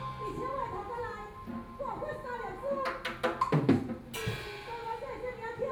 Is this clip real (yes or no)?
yes